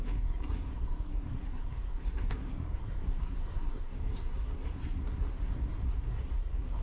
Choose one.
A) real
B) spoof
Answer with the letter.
B